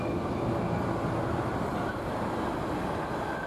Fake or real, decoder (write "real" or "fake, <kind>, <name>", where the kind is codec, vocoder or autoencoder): real